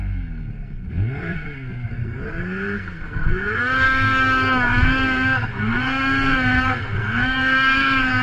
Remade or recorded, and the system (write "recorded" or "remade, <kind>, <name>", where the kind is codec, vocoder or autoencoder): remade, codec, SNAC